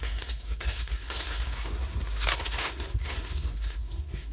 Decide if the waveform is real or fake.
fake